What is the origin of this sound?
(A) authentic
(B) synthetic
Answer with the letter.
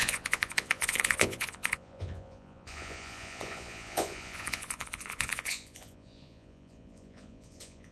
B